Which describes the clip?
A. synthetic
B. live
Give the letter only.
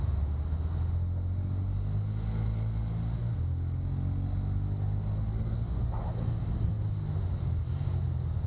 B